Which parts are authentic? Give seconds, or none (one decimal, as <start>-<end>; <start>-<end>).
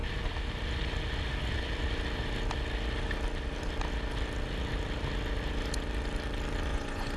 0.0-6.7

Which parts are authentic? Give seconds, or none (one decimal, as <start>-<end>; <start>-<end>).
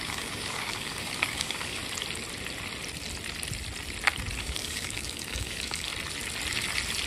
1.8-4.4; 5.9-7.1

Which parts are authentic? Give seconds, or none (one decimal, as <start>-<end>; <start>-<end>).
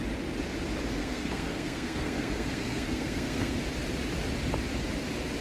0.0-1.0; 3.6-5.4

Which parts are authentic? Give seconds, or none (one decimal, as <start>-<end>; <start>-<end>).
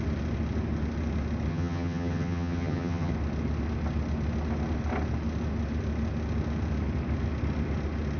0.0-1.5; 3.1-8.2